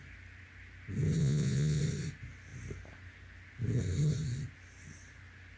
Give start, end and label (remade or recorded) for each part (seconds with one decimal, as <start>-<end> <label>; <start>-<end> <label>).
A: 0.0-1.2 recorded; 1.2-1.8 remade; 1.8-5.6 recorded